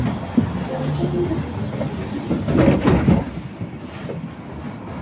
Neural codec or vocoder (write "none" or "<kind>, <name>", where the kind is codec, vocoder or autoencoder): none